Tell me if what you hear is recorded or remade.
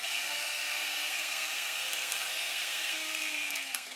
remade